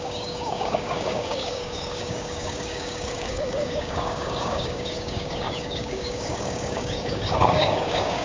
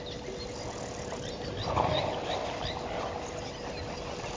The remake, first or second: first